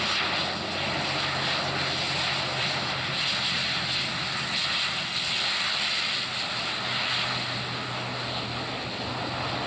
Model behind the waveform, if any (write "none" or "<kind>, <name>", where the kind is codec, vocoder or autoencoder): none